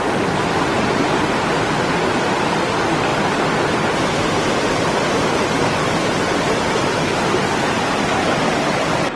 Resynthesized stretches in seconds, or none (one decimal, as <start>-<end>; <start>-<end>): none